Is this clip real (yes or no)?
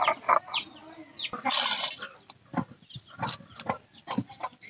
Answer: yes